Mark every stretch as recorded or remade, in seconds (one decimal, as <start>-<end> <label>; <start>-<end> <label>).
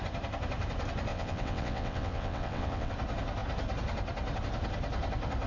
0.0-1.1 recorded; 1.1-2.9 remade; 2.9-5.5 recorded